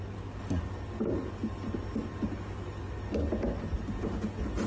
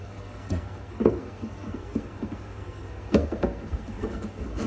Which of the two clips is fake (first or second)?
second